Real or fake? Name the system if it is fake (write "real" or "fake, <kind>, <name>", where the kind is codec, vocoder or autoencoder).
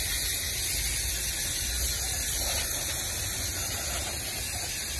real